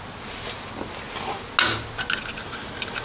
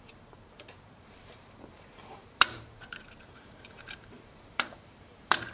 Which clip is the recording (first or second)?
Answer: first